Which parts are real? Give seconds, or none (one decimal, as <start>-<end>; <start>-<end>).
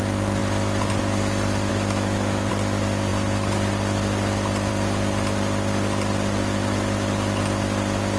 0.0-1.7; 2.5-8.2